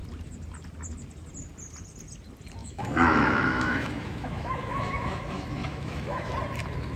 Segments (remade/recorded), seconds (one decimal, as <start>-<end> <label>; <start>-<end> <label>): 0.0-2.6 recorded; 2.6-6.3 remade; 6.3-7.0 recorded